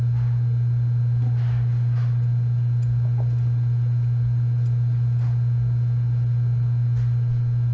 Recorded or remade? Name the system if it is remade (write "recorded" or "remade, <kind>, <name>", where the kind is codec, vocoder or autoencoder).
recorded